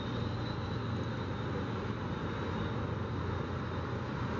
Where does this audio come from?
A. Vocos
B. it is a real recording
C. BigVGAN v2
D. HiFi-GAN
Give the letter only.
B